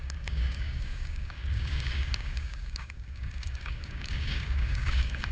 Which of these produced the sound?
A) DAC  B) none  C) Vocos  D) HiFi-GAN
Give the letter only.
A